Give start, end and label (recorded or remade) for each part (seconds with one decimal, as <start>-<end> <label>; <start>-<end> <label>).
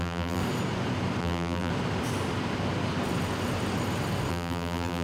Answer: 0.0-0.4 remade; 0.4-1.2 recorded; 1.2-1.7 remade; 1.7-4.3 recorded; 4.3-5.0 remade